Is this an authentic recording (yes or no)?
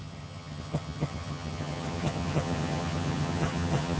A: no